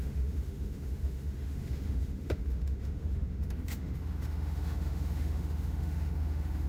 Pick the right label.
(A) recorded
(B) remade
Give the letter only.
B